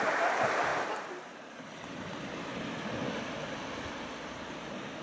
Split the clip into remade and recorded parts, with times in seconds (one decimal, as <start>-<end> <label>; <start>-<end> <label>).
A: 0.0-5.0 recorded